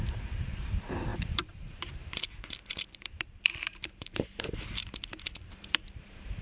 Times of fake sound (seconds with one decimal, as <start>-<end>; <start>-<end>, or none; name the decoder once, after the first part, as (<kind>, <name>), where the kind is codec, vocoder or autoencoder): 0.0-4.8 (vocoder, BigVGAN v2); 5.5-6.4